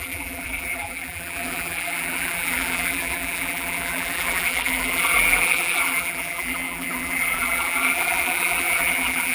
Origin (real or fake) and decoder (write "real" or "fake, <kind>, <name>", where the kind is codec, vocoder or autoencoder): fake, vocoder, BigVGAN v2